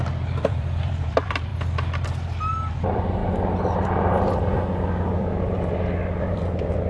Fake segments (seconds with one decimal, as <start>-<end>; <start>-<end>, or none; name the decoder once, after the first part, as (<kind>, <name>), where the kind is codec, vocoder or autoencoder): 0.0-1.5 (vocoder, BigVGAN v2); 2.7-3.2; 6.2-6.9